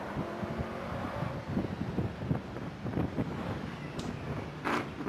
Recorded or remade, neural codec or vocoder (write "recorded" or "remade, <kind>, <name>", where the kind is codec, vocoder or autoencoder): recorded